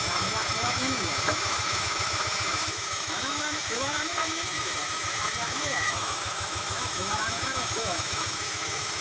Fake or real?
fake